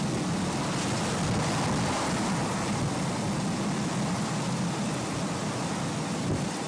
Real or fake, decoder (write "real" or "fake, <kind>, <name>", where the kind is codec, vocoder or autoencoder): real